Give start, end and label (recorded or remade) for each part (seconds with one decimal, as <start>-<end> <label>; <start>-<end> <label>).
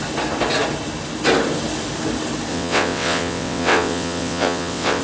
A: 0.0-2.5 recorded; 2.5-5.0 remade